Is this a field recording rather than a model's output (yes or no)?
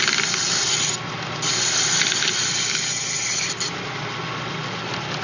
yes